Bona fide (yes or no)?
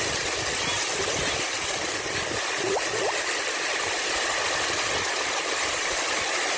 yes